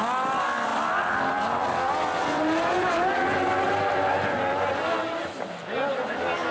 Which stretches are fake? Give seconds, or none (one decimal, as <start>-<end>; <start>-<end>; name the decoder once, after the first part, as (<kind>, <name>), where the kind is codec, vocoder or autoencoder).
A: 0.7-4.6 (vocoder, BigVGAN v2)